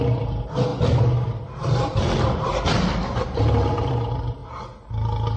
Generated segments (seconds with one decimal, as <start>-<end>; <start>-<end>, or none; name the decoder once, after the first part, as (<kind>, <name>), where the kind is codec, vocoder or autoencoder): none